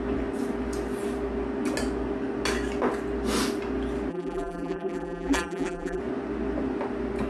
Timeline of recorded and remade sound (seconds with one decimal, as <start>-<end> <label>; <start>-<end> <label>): 0.0-4.1 recorded; 4.1-6.0 remade; 6.0-7.3 recorded